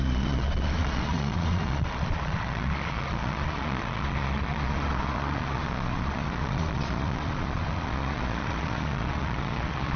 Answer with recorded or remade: remade